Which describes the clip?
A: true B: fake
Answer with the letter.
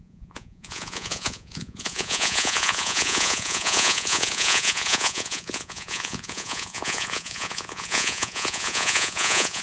B